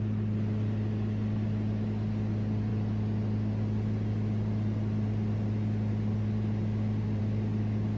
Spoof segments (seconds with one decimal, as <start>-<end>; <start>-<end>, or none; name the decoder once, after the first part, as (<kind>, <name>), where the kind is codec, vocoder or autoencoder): none